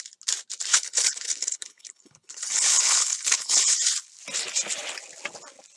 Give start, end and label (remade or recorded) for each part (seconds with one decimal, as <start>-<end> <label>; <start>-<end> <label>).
0.0-0.7 recorded; 0.7-3.9 remade; 3.9-5.8 recorded